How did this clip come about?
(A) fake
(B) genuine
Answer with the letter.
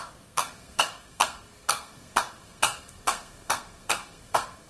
A